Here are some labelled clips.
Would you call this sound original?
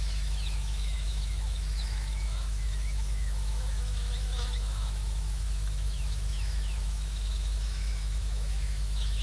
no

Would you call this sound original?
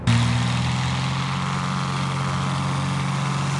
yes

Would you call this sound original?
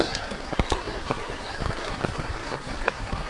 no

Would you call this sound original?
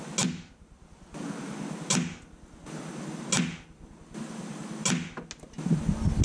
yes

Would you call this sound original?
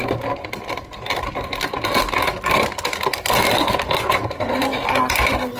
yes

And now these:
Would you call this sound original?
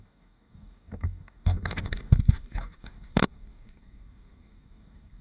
no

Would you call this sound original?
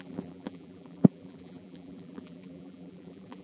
no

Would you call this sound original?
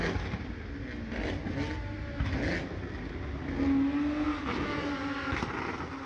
yes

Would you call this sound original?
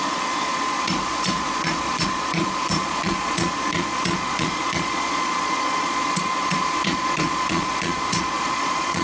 no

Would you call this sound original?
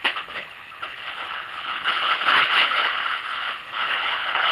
no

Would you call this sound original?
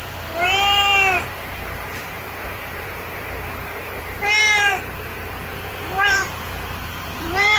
no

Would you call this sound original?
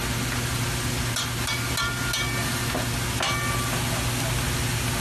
yes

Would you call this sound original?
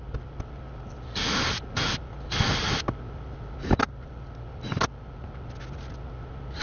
yes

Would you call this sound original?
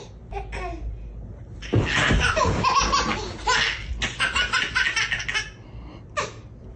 yes